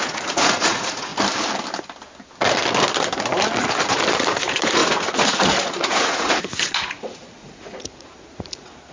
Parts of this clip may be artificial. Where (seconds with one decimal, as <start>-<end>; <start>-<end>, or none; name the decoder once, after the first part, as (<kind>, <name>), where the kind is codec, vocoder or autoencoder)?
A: 0.0-1.1 (vocoder, Vocos); 4.3-8.9